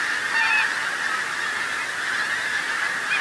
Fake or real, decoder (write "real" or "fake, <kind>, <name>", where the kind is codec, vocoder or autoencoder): real